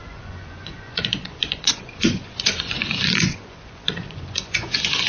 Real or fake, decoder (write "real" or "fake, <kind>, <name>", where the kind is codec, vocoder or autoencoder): fake, vocoder, Vocos